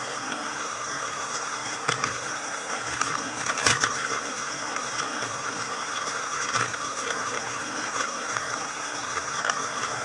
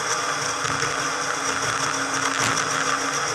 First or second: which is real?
second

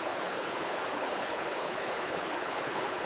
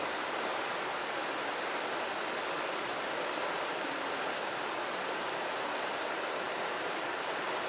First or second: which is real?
second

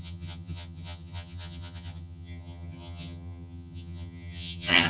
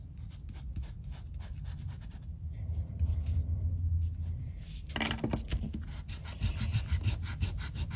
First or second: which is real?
second